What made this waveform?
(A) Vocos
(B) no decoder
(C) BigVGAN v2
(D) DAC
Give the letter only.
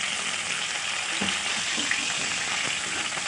B